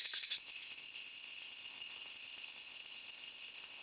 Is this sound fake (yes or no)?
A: yes